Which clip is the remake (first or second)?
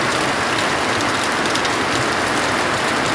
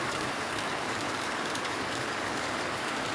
second